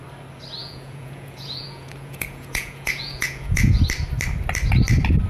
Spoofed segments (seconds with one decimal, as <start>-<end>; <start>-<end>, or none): 0.6-3.8